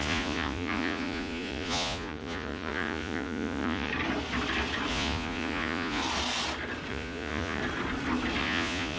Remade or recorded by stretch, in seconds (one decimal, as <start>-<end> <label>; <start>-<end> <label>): 0.0-3.9 remade; 3.9-4.9 recorded; 4.9-6.0 remade; 6.0-6.9 recorded; 6.9-7.6 remade; 7.6-8.4 recorded; 8.4-9.0 remade